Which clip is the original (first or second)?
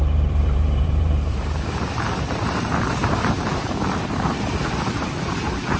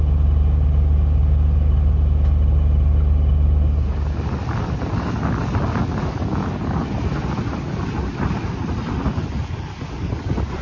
second